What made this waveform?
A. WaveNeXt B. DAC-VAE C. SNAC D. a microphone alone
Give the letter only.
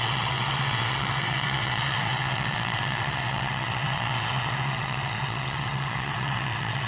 A